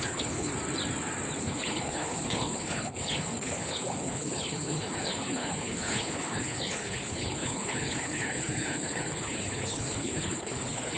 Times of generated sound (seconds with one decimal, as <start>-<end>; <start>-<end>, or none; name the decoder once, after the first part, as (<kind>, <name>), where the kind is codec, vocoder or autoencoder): 0.0-0.5 (codec, HILCodec); 1.4-11.0